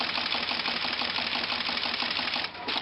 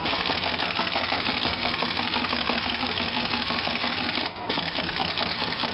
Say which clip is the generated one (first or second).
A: second